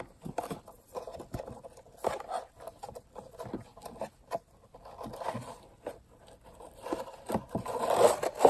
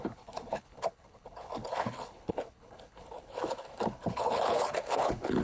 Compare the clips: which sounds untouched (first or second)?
first